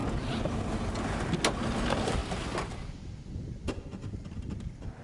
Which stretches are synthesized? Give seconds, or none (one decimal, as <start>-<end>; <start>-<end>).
none